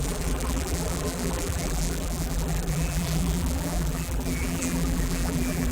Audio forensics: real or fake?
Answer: fake